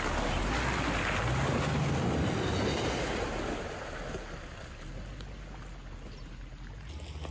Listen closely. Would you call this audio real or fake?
real